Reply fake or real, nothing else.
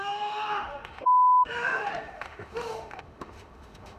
fake